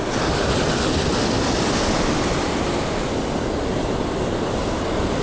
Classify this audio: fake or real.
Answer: real